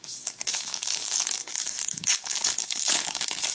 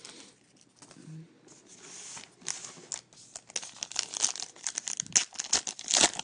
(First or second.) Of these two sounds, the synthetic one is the first